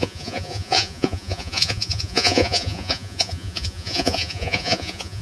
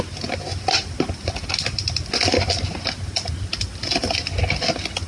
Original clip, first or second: second